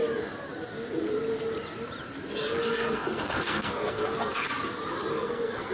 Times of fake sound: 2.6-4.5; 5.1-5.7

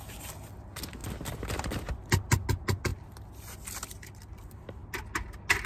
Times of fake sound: none

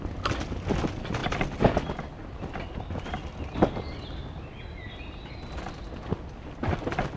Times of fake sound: none